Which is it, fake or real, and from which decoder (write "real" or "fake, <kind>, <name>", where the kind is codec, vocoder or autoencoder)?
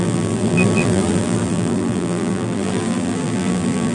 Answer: fake, vocoder, BigVGAN v2